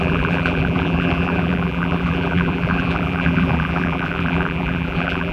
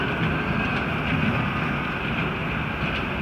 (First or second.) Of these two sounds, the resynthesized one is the first